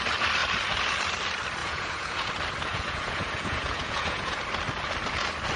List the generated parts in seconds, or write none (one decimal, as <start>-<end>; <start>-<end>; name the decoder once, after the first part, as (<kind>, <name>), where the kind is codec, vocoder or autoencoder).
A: 1.6-2.3 (vocoder, Vocos); 2.7-4.4